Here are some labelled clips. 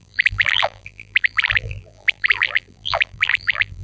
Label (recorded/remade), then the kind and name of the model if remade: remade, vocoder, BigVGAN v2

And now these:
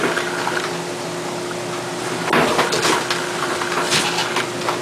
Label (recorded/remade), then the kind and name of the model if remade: recorded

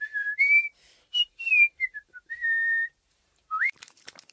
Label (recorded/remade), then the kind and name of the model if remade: remade, vocoder, BigVGAN v2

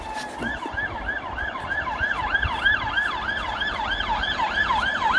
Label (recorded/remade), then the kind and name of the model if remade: recorded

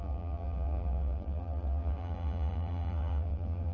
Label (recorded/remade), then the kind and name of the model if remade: remade, vocoder, BigVGAN v2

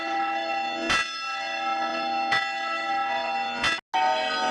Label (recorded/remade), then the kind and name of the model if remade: recorded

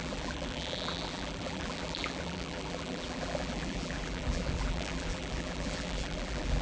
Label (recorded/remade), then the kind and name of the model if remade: remade, vocoder, BigVGAN v2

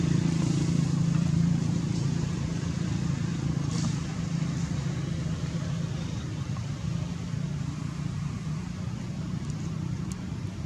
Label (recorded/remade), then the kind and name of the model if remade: remade, vocoder, BigVGAN v2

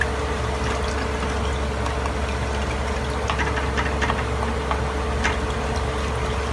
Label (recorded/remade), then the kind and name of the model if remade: recorded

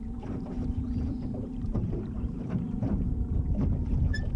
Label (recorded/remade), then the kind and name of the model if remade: remade, vocoder, BigVGAN v2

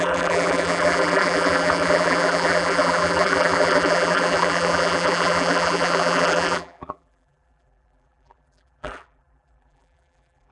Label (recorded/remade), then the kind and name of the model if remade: remade, vocoder, BigVGAN v2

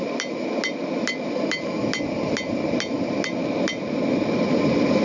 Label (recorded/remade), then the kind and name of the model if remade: recorded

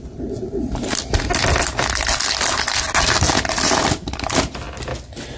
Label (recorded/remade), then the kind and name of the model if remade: recorded